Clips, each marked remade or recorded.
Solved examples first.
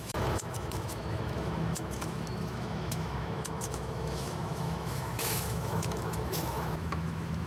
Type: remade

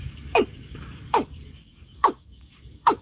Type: remade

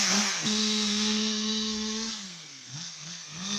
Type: remade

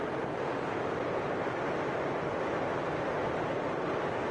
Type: recorded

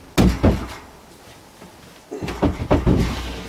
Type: recorded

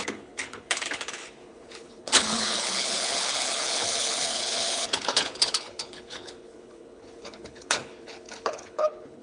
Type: remade